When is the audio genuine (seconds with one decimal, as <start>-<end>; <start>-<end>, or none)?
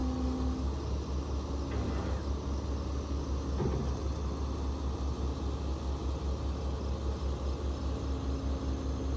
0.0-9.2